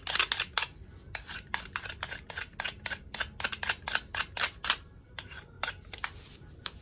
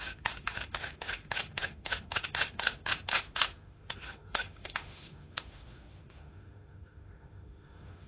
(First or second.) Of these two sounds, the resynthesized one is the second